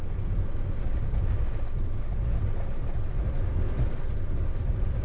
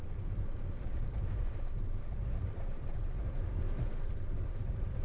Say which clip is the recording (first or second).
first